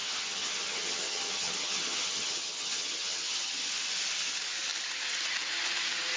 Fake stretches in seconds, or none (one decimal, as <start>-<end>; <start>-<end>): 0.0-3.7